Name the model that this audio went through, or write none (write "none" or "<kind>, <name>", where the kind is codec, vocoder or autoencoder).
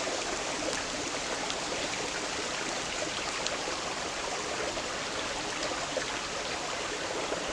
none